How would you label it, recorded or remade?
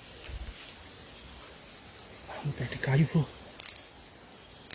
recorded